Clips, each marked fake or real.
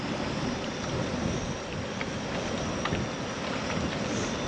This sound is real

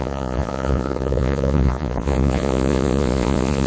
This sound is fake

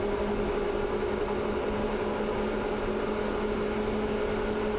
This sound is real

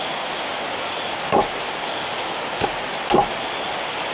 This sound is real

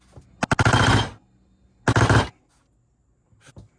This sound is real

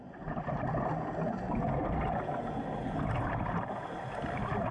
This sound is real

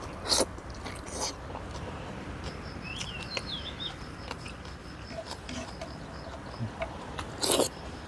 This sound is real